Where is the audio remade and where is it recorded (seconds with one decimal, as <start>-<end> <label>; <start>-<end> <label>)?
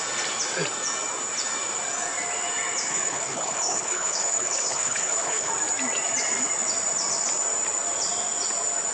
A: 0.0-2.9 recorded; 2.9-5.5 remade; 5.5-8.9 recorded